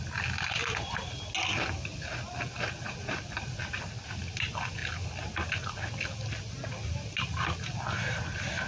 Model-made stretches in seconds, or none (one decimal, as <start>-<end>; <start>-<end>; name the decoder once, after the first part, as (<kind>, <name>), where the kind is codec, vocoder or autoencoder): none